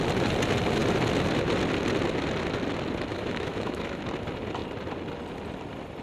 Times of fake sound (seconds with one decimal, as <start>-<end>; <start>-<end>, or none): 3.1-4.0